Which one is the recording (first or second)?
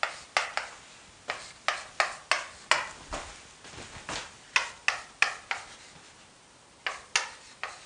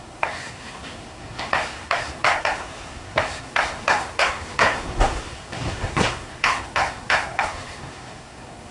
first